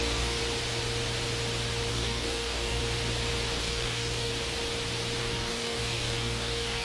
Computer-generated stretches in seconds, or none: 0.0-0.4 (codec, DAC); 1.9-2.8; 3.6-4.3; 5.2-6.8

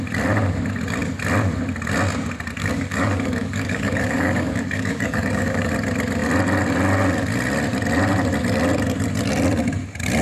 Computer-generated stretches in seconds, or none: 2.6-5.7 (codec, DAC)